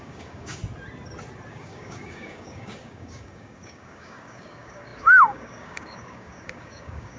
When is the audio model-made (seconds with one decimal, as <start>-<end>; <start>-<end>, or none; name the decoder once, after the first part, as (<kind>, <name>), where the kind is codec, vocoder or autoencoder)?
0.0-0.6 (codec, DAC); 1.5-7.2